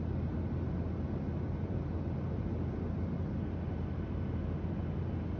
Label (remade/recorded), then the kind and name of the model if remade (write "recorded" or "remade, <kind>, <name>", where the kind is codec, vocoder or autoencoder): recorded